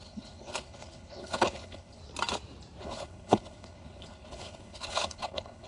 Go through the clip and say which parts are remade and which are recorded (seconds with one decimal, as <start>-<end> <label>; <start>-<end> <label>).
0.0-2.0 remade; 2.0-2.8 recorded; 2.8-5.7 remade